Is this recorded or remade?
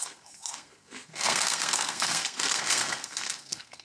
remade